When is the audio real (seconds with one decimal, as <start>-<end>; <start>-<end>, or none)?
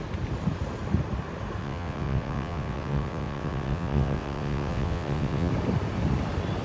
0.0-1.6; 5.5-6.6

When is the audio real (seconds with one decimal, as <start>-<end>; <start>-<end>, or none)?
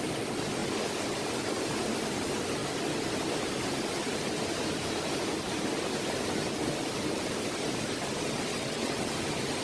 0.0-8.5; 9.1-9.6